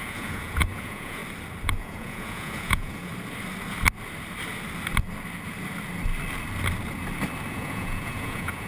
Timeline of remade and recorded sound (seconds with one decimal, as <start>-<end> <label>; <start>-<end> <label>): 0.0-1.2 remade; 1.2-1.8 recorded; 1.8-3.1 remade; 3.1-7.5 recorded; 7.5-8.7 remade